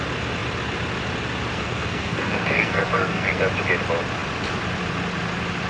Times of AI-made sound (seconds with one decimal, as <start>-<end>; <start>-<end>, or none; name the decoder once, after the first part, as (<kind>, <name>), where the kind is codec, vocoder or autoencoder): 1.5-3.4 (codec, SNAC)